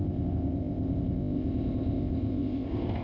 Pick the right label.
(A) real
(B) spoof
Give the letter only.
B